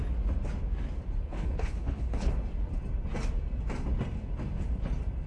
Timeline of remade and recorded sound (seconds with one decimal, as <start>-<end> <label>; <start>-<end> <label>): 0.0-1.3 recorded; 1.3-2.3 remade; 2.3-5.3 recorded